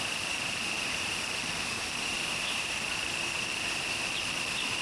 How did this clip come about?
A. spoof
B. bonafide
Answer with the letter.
A